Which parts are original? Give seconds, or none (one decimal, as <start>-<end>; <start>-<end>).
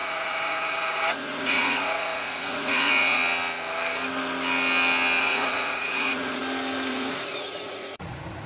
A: 3.2-5.2; 6.4-6.9